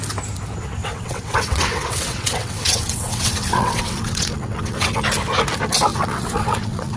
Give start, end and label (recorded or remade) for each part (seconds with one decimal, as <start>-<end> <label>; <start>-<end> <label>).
0.0-0.8 recorded; 0.8-5.0 remade; 5.0-5.9 recorded; 5.9-7.0 remade